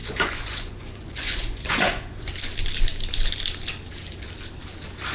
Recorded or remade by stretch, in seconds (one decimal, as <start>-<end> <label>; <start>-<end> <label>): 0.0-2.3 remade; 2.3-5.1 recorded